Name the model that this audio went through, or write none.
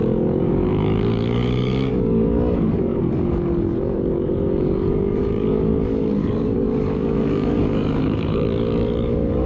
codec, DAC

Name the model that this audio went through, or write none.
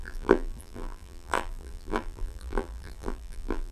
vocoder, BigVGAN v2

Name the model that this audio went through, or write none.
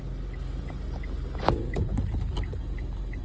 none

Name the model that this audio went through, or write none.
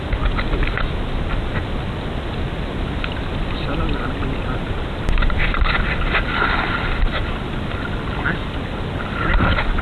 none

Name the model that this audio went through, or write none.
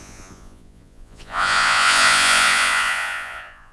vocoder, Vocos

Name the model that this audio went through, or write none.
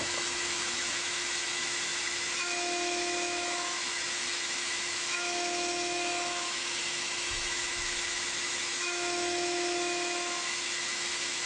autoencoder, DAC-VAE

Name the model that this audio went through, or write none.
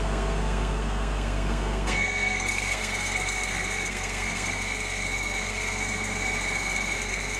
codec, SNAC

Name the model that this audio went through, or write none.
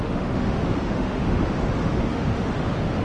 autoencoder, DAC-VAE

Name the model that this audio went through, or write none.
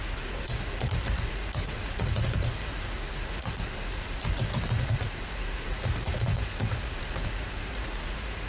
vocoder, Vocos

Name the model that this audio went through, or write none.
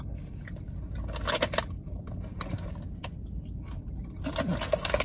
none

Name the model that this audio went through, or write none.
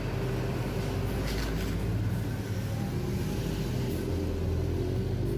none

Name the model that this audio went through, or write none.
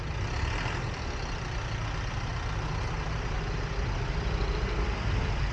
none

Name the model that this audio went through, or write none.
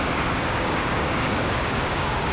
codec, DAC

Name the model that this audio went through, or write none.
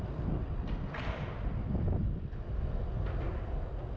none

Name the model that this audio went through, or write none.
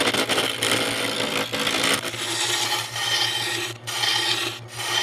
none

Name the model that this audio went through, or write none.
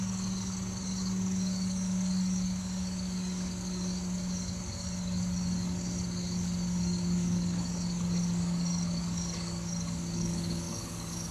codec, DAC